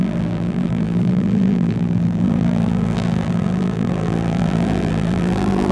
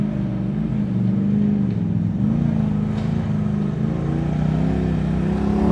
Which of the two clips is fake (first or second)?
first